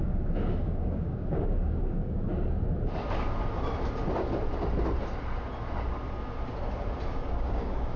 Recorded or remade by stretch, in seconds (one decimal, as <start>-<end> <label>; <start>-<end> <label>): 0.0-2.3 remade; 2.3-7.1 recorded; 7.1-8.0 remade